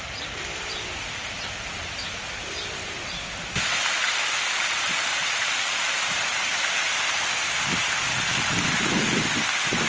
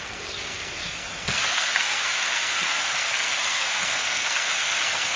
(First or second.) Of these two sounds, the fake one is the second